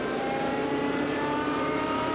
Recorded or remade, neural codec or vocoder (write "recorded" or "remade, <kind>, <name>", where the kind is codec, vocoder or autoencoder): remade, vocoder, BigVGAN v2